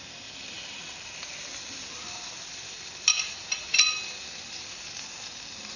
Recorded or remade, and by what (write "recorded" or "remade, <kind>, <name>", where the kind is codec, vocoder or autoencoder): recorded